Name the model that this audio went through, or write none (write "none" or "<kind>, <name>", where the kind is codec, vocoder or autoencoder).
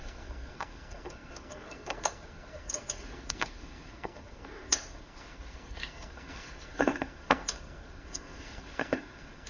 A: codec, SNAC